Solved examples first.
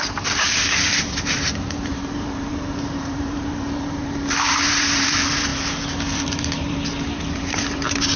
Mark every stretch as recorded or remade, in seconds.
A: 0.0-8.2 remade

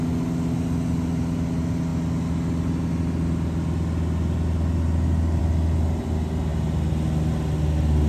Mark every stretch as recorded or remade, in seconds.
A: 0.0-8.1 recorded

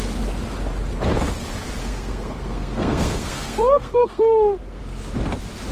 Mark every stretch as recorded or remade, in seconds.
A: 0.0-1.8 recorded; 1.8-4.8 remade; 4.8-5.7 recorded

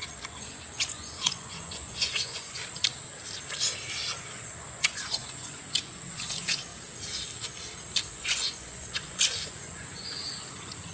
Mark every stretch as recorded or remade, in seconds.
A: 0.0-2.6 remade; 2.6-4.2 recorded; 4.2-6.7 remade; 6.7-8.1 recorded; 8.1-10.9 remade

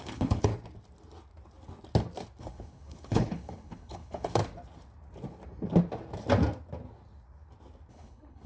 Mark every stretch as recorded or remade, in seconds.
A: 0.0-0.5 remade; 0.5-2.4 recorded; 2.4-4.4 remade; 4.4-7.9 recorded; 7.9-8.5 remade

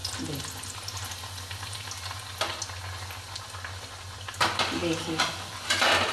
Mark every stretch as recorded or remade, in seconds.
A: 0.0-6.1 recorded

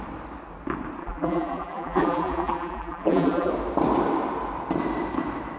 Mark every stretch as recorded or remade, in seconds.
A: 0.0-1.0 recorded; 1.0-3.5 remade; 3.5-5.6 recorded